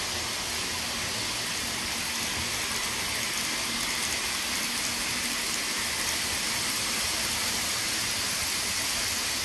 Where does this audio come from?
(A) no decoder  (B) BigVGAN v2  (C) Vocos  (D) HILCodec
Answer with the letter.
A